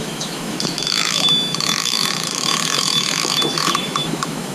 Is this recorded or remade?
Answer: remade